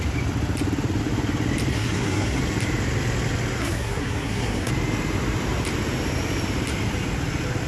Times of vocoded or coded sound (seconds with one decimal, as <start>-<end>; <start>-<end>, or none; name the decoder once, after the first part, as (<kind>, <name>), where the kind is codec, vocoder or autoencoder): 1.7-2.4 (codec, SNAC); 3.6-4.7